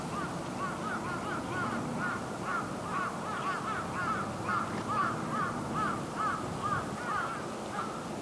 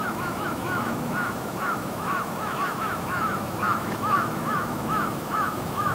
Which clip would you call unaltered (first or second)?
first